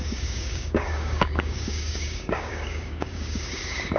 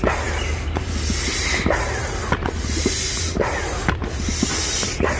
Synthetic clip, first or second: first